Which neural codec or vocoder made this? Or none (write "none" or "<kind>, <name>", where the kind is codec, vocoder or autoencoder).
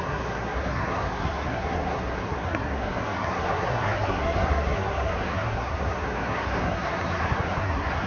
codec, SNAC